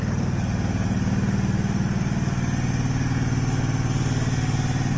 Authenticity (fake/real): real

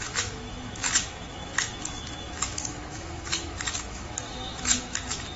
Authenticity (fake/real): fake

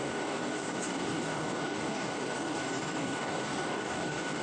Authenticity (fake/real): fake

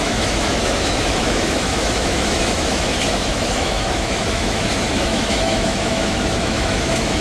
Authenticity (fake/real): fake